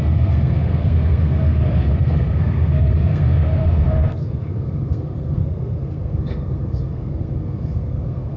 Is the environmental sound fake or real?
fake